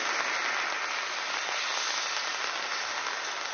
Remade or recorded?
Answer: recorded